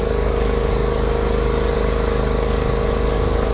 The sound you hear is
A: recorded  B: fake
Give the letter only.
B